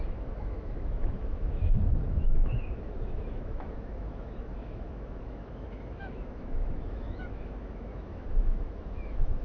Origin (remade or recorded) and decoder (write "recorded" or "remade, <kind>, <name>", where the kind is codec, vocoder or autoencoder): remade, autoencoder, DAC-VAE